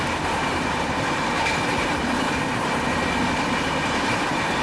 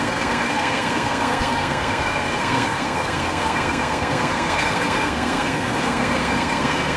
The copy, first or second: second